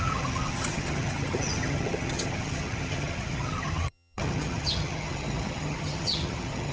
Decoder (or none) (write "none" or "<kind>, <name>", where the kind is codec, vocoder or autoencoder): vocoder, HiFi-GAN